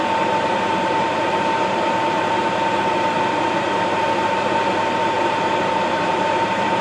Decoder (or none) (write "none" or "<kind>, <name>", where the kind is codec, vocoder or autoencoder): vocoder, BigVGAN v2